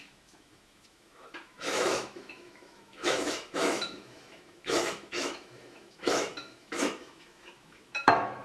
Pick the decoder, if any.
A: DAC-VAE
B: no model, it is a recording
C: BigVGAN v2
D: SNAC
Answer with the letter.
A